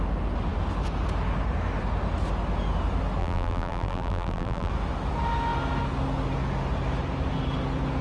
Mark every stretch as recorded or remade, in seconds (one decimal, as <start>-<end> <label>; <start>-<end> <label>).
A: 0.0-3.2 recorded; 3.2-4.7 remade; 4.7-8.0 recorded

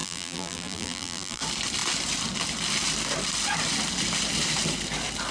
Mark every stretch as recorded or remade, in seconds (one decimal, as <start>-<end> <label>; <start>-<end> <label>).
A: 0.0-1.4 remade; 1.4-5.3 recorded

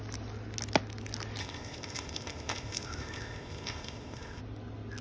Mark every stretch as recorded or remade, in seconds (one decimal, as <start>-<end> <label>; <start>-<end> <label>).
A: 0.0-1.4 recorded; 1.4-4.4 remade; 4.4-5.0 recorded

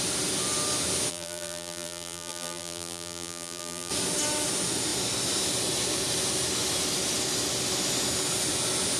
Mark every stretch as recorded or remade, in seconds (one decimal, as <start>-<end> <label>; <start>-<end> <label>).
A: 0.0-1.1 recorded; 1.1-3.9 remade; 3.9-9.0 recorded

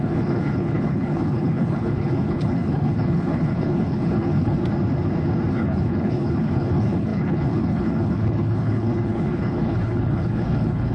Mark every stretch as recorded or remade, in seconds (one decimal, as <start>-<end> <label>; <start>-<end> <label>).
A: 0.0-4.6 remade; 4.6-5.5 recorded; 5.5-10.9 remade

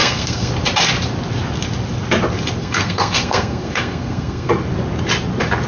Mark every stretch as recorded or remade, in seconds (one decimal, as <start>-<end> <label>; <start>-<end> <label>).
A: 0.0-0.5 remade; 0.5-2.6 recorded; 2.6-4.5 remade; 4.5-5.7 recorded

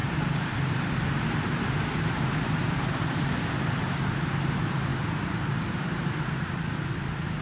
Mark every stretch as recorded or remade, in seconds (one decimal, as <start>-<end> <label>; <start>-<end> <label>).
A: 0.0-3.5 remade; 3.5-4.9 recorded; 4.9-6.9 remade; 6.9-7.4 recorded